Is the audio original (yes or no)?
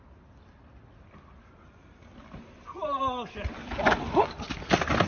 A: yes